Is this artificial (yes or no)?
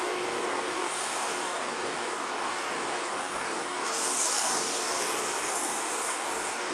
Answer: yes